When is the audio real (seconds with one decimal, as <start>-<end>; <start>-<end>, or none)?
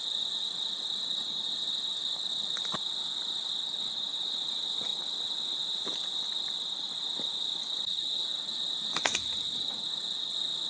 0.0-2.0; 3.5-10.7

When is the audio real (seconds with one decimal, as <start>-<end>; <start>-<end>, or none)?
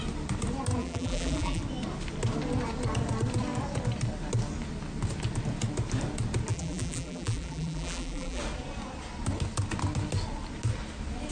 0.0-0.8; 1.6-6.5; 8.4-11.3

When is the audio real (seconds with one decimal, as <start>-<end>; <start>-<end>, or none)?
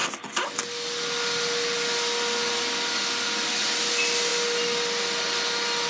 0.0-5.9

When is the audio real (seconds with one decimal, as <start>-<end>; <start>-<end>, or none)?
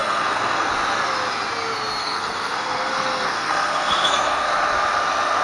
0.7-2.0; 4.5-5.4